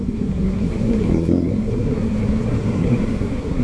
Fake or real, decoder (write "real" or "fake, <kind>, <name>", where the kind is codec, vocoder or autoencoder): fake, codec, SNAC